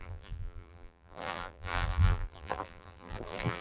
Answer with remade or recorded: remade